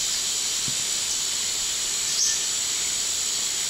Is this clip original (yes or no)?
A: yes